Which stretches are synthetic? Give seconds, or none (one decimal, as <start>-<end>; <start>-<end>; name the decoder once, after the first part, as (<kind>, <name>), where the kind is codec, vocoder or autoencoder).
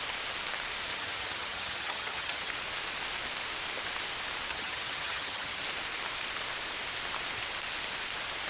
0.9-2.5 (vocoder, HiFi-GAN); 4.5-5.6